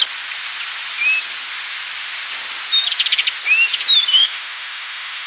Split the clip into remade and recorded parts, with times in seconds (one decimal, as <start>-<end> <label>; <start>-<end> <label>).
0.0-4.1 recorded; 4.1-5.3 remade